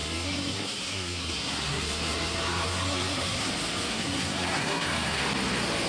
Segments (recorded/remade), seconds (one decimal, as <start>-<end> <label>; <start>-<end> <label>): 0.0-3.5 remade; 3.5-3.9 recorded; 3.9-5.2 remade; 5.2-5.9 recorded